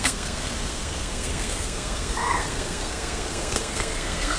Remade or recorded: remade